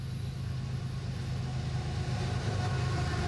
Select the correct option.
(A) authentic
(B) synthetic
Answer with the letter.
A